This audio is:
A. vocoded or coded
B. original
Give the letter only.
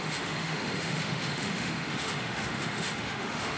A